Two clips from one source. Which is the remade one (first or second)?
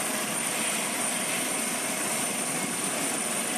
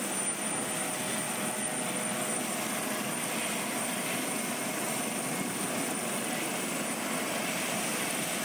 first